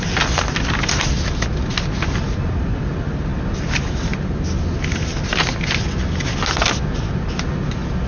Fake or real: real